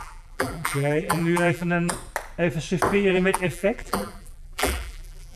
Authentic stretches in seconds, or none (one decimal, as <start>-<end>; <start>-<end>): 1.9-3.1